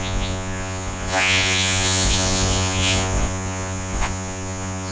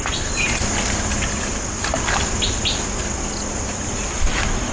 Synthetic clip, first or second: first